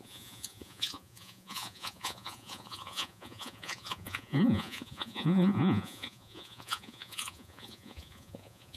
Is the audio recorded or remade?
remade